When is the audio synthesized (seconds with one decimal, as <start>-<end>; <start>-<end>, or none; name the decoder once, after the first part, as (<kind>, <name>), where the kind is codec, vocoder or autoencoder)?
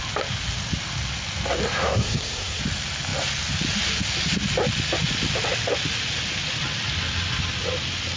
1.8-2.6 (codec, SNAC)